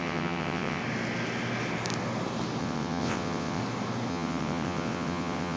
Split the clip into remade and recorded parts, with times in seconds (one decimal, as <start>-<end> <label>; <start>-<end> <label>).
0.0-0.8 remade; 0.8-2.6 recorded; 2.6-3.6 remade; 3.6-4.1 recorded; 4.1-5.6 remade